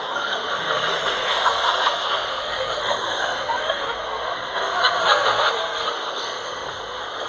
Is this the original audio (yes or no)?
no